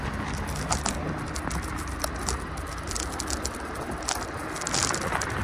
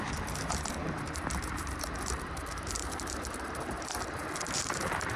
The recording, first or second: first